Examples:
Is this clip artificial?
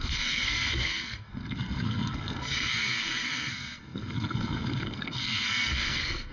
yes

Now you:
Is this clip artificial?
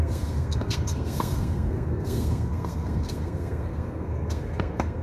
yes